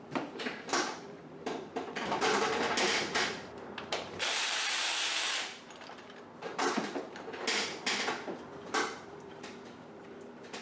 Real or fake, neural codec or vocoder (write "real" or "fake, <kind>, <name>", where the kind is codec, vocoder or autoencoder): fake, vocoder, BigVGAN v2